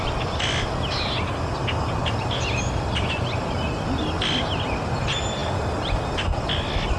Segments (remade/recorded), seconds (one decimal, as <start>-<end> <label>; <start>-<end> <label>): 0.0-2.0 recorded; 2.0-3.1 remade; 3.1-7.0 recorded